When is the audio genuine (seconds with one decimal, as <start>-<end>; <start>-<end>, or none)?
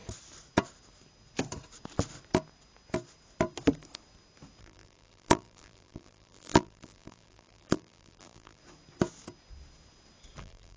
0.0-4.6; 8.6-10.4